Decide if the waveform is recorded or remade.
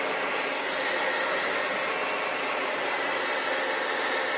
recorded